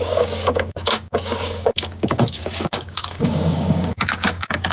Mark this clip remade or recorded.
remade